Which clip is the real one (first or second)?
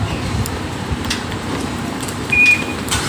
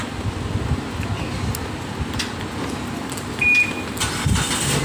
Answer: second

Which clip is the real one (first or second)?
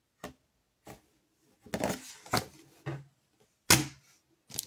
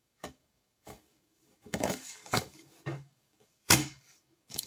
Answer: first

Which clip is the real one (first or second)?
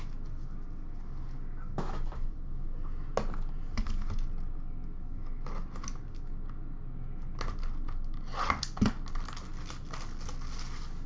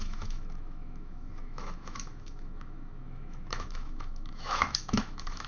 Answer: first